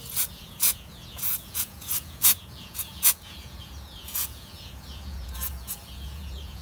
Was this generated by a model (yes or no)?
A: yes